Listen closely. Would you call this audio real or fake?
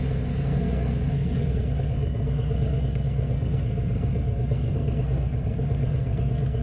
fake